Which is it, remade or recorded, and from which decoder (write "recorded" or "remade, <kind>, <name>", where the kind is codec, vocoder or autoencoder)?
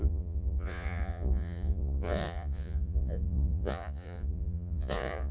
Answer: remade, vocoder, Vocos